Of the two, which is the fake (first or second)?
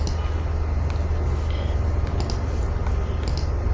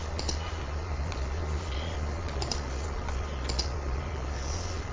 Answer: second